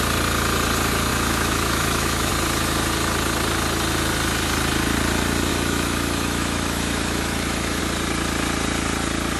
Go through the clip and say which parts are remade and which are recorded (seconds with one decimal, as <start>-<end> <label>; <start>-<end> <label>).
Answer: 0.0-1.1 recorded; 1.1-2.3 remade; 2.3-5.5 recorded; 5.5-7.8 remade; 7.8-9.4 recorded